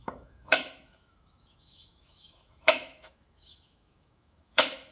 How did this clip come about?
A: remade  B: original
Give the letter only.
A